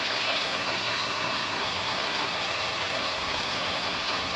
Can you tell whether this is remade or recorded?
remade